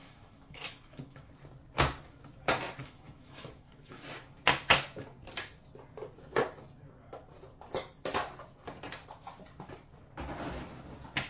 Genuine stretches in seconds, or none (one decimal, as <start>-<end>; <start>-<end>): 1.3-2.8; 4.0-11.3